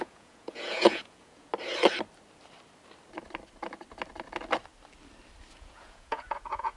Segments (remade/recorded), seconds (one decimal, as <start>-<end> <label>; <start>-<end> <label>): 0.0-1.5 remade; 1.5-5.5 recorded; 5.5-6.8 remade